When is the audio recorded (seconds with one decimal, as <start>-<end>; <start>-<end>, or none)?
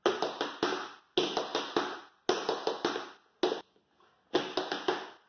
0.0-5.3